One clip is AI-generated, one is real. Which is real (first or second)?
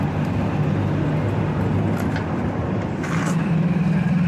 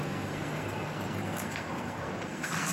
first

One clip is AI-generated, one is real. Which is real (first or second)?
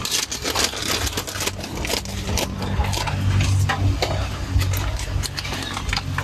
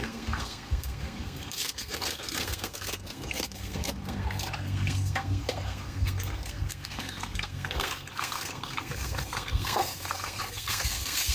first